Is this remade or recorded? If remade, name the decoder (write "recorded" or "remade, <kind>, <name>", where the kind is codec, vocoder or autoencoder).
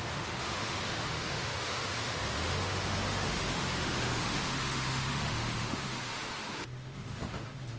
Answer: remade, autoencoder, DAC-VAE